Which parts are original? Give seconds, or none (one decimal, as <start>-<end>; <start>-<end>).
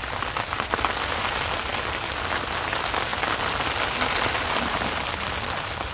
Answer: 0.0-5.9